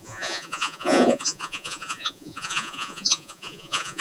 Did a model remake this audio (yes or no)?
yes